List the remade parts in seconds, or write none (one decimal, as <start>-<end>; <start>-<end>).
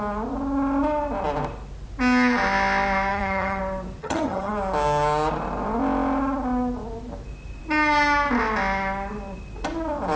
3.1-3.6; 4.0-4.5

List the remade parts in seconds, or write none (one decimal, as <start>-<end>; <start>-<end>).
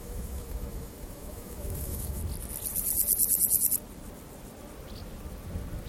0.0-2.2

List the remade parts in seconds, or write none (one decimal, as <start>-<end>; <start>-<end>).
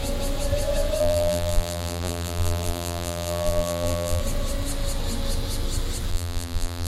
1.0-4.2; 6.1-6.9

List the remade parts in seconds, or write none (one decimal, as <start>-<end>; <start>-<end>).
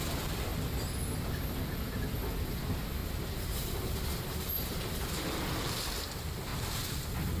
3.0-3.8; 6.5-7.0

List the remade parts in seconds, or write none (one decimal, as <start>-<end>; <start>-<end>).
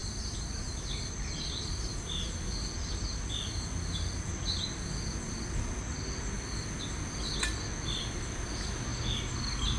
0.0-2.3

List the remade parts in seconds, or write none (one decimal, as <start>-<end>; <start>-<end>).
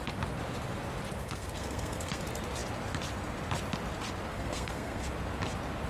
1.2-2.2; 4.3-5.1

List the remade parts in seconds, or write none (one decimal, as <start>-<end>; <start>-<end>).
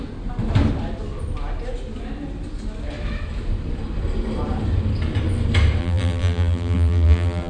5.8-7.5